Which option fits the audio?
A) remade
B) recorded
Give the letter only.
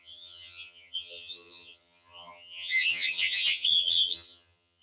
A